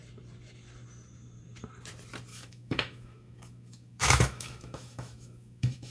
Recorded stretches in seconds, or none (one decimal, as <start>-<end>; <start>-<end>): 0.0-2.3